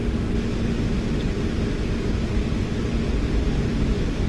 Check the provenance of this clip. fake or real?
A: real